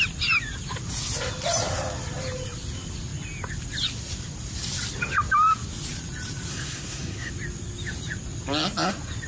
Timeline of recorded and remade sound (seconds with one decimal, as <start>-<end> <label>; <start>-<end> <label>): 0.0-6.5 recorded; 6.5-7.3 remade; 7.3-9.3 recorded